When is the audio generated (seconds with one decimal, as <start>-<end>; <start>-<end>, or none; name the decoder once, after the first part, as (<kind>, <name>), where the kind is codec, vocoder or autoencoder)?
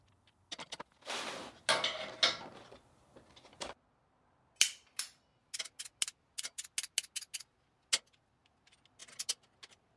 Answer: none